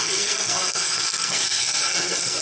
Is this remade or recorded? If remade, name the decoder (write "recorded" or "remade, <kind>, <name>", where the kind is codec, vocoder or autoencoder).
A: remade, codec, SNAC